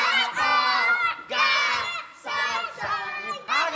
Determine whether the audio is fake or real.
real